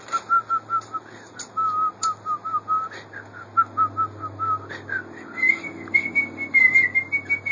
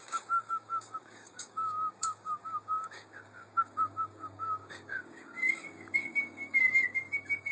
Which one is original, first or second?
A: first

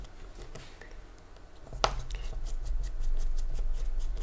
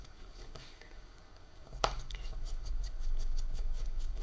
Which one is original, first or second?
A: first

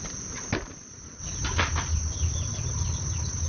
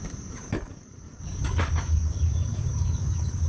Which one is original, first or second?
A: first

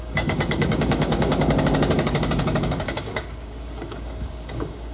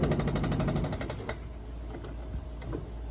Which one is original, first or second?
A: second